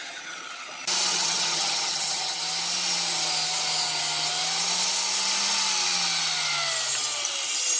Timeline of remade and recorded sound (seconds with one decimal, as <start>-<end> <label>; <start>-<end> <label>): 0.0-0.7 remade; 0.7-1.1 recorded; 1.1-2.4 remade; 2.4-7.8 recorded